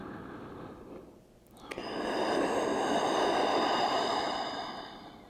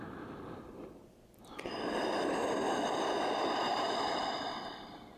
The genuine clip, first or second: first